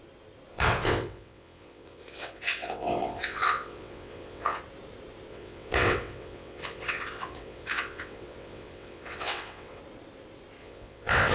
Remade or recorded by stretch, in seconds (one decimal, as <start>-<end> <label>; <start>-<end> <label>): 0.0-0.5 recorded; 0.5-4.6 remade; 4.6-5.3 recorded; 5.3-9.8 remade; 9.8-10.6 recorded; 10.6-11.3 remade

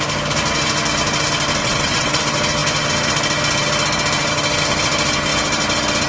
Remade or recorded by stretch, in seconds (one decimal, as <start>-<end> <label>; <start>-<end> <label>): 0.0-1.6 recorded; 1.6-2.2 remade; 2.2-6.1 recorded